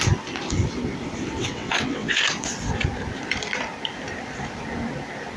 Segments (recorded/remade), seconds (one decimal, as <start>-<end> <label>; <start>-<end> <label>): 0.0-1.4 recorded; 1.4-2.2 remade; 2.2-5.4 recorded